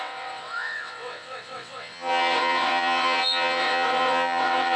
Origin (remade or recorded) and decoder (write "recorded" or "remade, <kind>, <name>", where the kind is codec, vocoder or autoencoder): remade, vocoder, WaveNeXt